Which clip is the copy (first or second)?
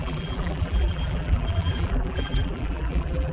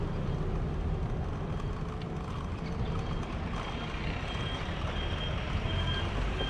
first